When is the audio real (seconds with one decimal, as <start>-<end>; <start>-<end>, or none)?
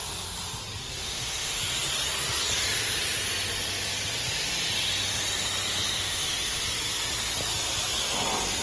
0.0-1.0; 1.6-5.9; 6.6-8.6